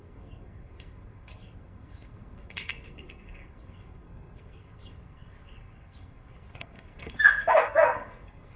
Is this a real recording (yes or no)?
no